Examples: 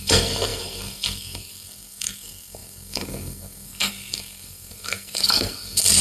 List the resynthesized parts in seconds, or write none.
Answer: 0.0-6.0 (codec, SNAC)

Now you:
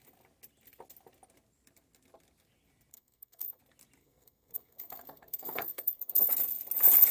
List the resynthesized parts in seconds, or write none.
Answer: 2.9-3.6 (codec, SNAC); 4.0-6.3